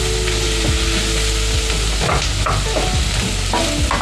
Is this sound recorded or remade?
recorded